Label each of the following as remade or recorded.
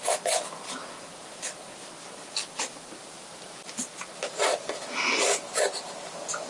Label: recorded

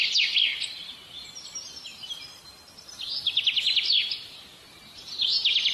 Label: recorded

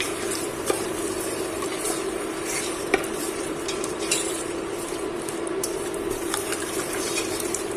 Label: remade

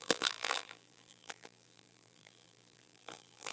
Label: remade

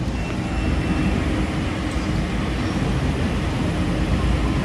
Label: recorded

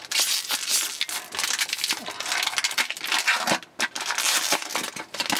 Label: recorded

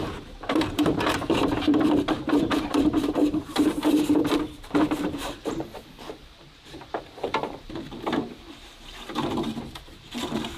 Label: remade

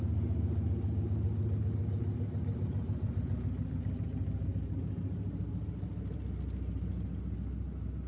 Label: recorded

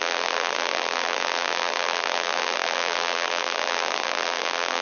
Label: remade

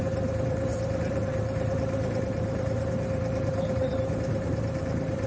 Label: remade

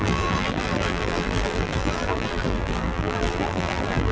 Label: remade